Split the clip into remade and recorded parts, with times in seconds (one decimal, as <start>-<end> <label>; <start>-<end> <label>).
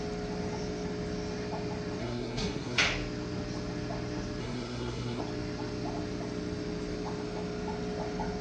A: 0.0-2.0 recorded; 2.0-2.8 remade; 2.8-4.4 recorded; 4.4-5.2 remade; 5.2-8.4 recorded